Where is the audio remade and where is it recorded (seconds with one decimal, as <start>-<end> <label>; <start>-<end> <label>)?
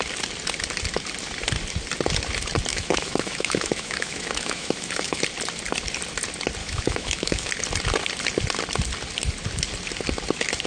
0.0-2.7 recorded; 2.7-5.2 remade; 5.2-6.6 recorded; 6.6-7.5 remade; 7.5-10.7 recorded